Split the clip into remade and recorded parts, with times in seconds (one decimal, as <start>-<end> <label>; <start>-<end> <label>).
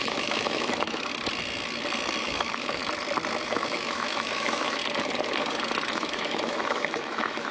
0.0-1.1 remade; 1.1-2.2 recorded; 2.2-2.8 remade; 2.8-3.4 recorded; 3.4-4.8 remade; 4.8-5.9 recorded; 5.9-7.5 remade